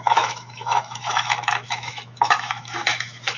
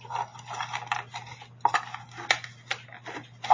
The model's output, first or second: first